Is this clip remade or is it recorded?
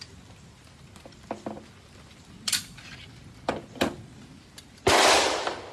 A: recorded